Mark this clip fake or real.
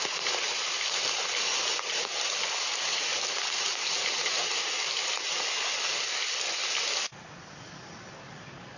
real